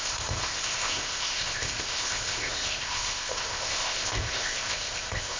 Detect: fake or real fake